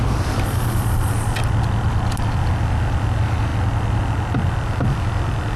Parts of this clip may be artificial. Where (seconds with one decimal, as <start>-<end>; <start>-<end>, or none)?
none